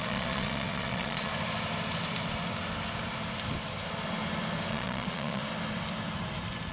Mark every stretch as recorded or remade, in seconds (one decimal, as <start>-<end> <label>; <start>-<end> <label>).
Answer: 0.0-1.3 remade; 1.3-4.7 recorded; 4.7-5.4 remade; 5.4-6.7 recorded